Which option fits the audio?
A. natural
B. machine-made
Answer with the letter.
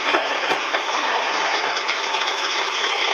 B